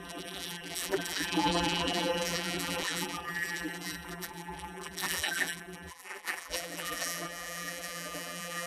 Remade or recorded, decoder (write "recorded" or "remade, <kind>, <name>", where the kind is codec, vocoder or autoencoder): remade, vocoder, BigVGAN v2